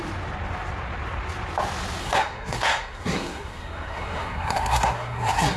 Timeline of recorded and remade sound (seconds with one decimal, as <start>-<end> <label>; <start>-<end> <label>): 0.0-2.0 recorded; 2.0-5.6 remade